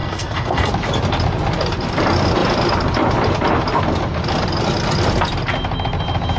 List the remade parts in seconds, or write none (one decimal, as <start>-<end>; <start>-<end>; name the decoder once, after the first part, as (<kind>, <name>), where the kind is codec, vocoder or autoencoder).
0.0-0.7 (codec, SNAC)